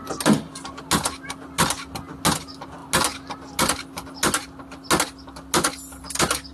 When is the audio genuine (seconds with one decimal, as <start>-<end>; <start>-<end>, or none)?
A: 0.0-6.5